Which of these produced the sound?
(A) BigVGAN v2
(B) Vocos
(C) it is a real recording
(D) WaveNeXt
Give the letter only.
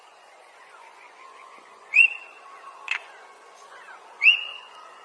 B